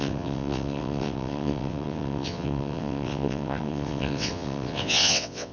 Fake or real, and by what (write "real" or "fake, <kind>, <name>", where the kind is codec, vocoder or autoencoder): fake, vocoder, WaveNeXt